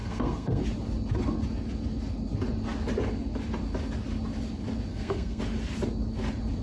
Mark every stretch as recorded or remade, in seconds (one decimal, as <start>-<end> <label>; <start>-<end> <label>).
0.0-0.6 remade; 0.6-4.9 recorded; 4.9-5.4 remade; 5.4-6.6 recorded